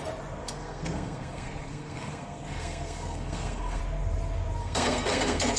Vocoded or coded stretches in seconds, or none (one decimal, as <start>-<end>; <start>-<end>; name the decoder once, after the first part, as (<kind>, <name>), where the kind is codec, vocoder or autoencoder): 0.4-3.8 (codec, SNAC); 4.6-5.6